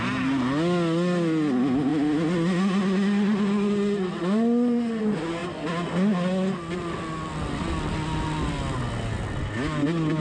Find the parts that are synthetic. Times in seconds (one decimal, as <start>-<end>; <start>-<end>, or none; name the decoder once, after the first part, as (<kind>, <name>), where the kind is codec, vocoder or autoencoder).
none